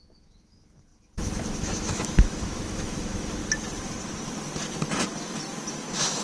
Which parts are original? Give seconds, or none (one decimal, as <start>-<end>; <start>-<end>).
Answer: 3.4-5.7